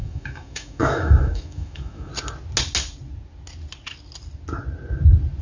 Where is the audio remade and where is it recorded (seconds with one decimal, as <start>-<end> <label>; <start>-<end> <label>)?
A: 0.0-2.1 remade; 2.1-5.4 recorded